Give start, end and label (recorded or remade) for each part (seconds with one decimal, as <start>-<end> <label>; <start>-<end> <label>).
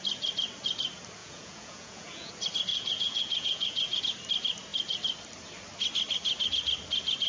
0.0-1.2 recorded; 1.2-2.3 remade; 2.3-2.7 recorded; 2.7-4.0 remade; 4.0-7.3 recorded